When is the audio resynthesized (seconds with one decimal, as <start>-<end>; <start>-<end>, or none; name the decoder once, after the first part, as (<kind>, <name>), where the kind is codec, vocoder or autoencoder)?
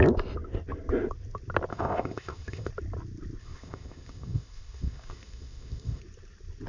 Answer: 1.7-2.7 (codec, ZipCodec); 3.4-6.0